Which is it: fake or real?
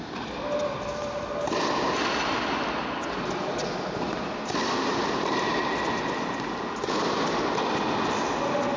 real